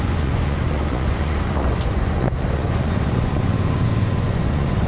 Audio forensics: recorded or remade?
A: remade